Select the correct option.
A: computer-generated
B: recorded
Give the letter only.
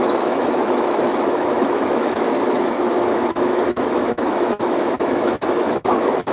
A